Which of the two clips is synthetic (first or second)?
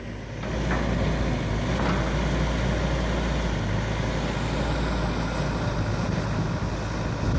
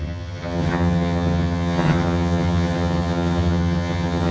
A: second